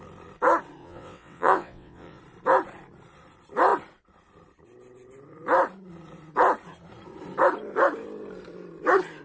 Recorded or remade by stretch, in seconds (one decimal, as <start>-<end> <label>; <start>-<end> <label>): 0.0-0.8 recorded; 0.8-2.2 remade; 2.2-9.2 recorded